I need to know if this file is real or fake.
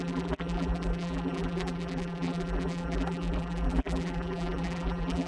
fake